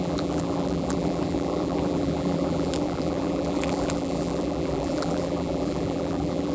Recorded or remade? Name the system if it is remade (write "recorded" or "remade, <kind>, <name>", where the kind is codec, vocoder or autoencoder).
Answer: remade, vocoder, BigVGAN v2